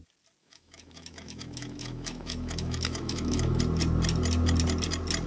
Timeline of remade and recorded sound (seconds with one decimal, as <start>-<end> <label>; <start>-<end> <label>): 0.0-0.4 recorded; 0.4-3.6 remade; 3.6-5.3 recorded